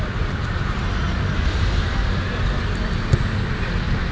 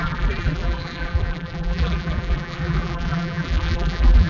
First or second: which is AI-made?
second